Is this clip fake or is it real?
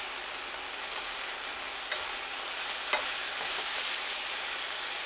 real